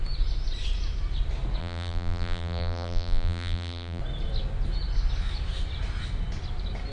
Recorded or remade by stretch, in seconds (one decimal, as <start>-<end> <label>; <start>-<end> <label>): 0.0-1.6 recorded; 1.6-4.0 remade; 4.0-6.9 recorded